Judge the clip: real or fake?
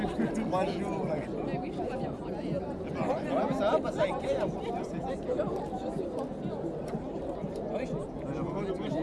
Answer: real